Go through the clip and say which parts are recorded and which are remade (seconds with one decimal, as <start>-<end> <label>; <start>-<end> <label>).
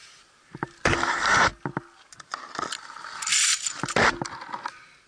0.0-5.1 recorded